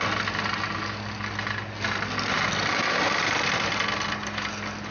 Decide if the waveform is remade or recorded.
recorded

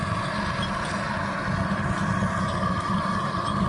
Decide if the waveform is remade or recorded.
recorded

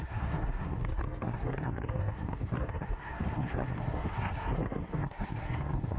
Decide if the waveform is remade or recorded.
remade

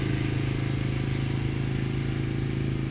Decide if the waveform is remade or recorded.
recorded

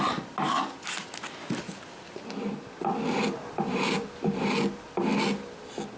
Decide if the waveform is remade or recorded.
recorded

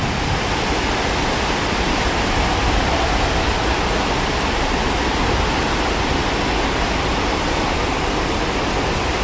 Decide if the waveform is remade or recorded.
recorded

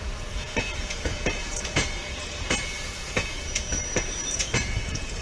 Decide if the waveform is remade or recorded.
remade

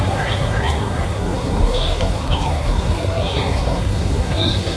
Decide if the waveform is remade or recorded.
remade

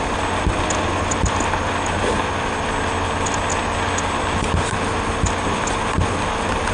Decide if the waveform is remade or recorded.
recorded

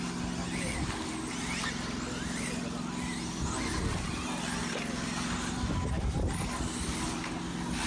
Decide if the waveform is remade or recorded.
recorded